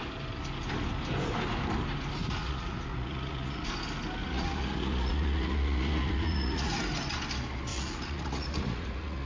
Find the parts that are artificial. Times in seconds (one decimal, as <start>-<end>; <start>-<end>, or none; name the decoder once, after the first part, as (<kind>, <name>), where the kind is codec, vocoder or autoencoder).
2.4-3.7 (vocoder, Vocos); 4.2-6.7; 7.7-9.3